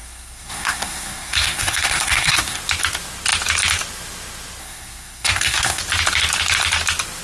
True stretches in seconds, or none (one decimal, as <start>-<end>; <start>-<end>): 2.6-4.6; 5.8-7.2